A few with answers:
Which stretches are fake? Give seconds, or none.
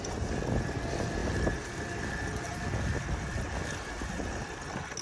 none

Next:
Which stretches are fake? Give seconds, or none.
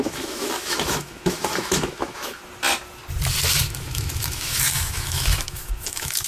0.0-2.4 (autoencoder, DAC-VAE); 3.5-6.3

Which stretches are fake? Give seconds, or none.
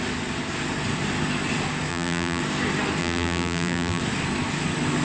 1.9-2.4 (vocoder, BigVGAN v2); 3.0-4.0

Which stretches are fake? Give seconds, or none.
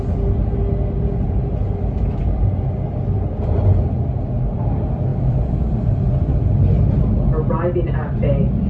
5.1-6.1 (vocoder, BigVGAN v2)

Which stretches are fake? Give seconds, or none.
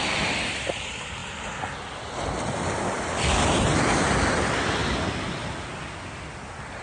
none